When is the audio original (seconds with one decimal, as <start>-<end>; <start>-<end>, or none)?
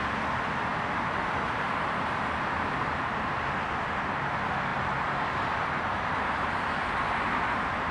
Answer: 0.0-7.9